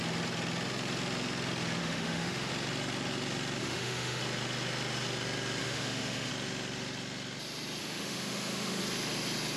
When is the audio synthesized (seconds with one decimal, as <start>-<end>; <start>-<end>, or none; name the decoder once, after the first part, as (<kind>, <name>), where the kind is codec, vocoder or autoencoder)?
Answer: 1.8-2.5 (autoencoder, DAC-VAE); 3.6-4.2; 5.6-6.3; 7.8-8.8